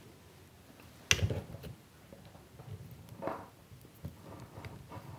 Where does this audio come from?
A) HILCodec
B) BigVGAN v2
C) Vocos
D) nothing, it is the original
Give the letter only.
D